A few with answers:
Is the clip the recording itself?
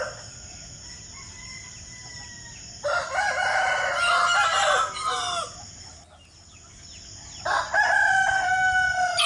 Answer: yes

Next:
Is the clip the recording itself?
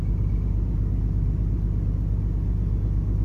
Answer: yes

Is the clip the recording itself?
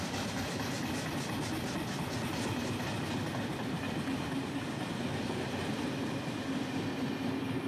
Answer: yes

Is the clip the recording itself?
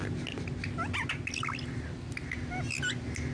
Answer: yes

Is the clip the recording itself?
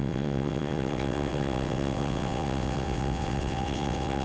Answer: no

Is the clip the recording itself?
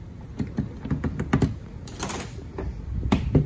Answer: yes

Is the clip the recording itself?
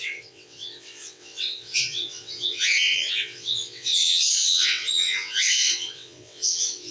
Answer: no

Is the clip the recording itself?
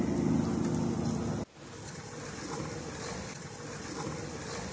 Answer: yes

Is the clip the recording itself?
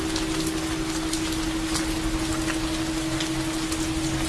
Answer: yes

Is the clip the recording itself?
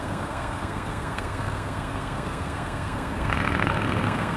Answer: no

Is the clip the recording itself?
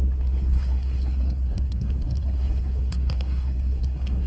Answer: no